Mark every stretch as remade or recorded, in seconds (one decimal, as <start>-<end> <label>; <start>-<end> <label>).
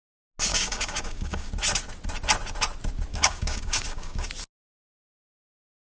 0.0-0.5 recorded; 0.5-1.5 remade; 1.5-3.1 recorded; 3.1-4.3 remade; 4.3-5.8 recorded